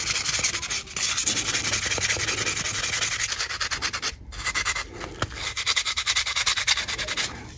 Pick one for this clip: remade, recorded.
recorded